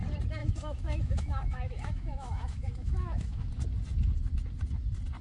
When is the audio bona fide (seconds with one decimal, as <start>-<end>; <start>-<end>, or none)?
0.0-0.4; 3.5-5.2